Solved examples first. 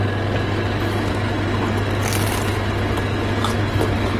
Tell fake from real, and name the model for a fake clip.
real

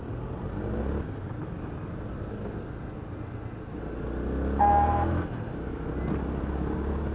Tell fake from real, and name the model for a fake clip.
real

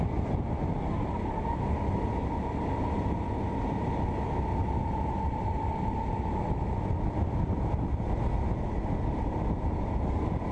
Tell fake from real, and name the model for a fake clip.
real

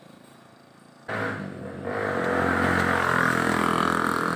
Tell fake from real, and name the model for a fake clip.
real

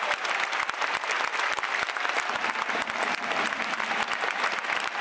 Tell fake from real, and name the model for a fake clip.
real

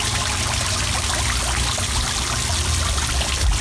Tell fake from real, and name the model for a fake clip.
real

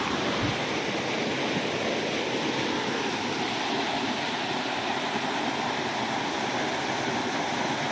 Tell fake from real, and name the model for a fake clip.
real